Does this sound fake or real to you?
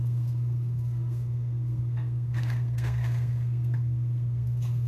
fake